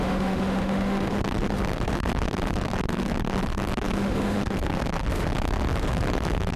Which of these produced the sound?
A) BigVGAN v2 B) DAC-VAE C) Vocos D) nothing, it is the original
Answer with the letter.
B